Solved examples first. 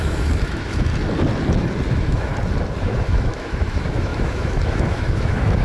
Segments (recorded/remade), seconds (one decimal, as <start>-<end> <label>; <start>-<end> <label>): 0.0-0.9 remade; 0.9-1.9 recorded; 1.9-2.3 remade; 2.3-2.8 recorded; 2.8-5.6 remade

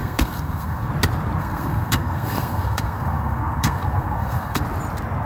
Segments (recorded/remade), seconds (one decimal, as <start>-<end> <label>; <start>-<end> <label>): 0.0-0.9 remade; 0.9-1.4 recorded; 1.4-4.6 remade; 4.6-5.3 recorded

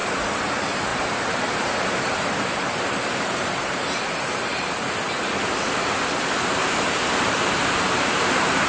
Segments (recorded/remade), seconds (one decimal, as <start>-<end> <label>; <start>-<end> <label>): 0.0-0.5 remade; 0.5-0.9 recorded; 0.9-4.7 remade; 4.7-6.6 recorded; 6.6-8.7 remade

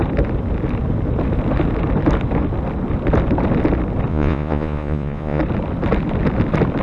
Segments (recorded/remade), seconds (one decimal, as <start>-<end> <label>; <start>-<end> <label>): 0.0-4.1 recorded; 4.1-5.4 remade; 5.4-6.8 recorded

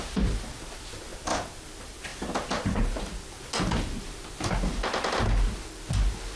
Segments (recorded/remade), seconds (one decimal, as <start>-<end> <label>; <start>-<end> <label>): 0.0-1.1 recorded; 1.1-1.6 remade; 1.6-6.4 recorded

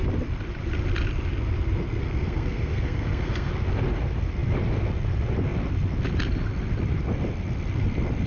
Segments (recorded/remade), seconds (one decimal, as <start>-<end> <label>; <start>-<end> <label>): 0.0-2.0 recorded; 2.0-3.5 remade; 3.5-8.3 recorded

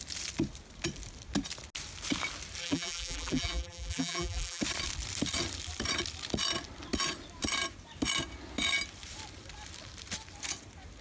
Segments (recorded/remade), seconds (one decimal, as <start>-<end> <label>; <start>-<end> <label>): 0.0-2.6 recorded; 2.6-4.6 remade; 4.6-11.0 recorded